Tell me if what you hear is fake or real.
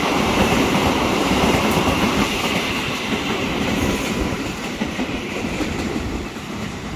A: fake